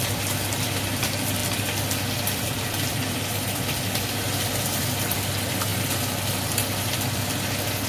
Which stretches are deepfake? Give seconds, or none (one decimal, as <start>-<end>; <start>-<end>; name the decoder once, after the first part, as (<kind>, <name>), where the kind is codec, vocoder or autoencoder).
0.0-5.7 (vocoder, BigVGAN v2); 6.3-7.9